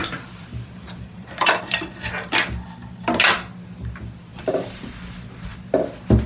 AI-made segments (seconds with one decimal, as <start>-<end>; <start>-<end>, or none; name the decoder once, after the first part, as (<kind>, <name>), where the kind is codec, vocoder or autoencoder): 0.0-2.1 (vocoder, BigVGAN v2)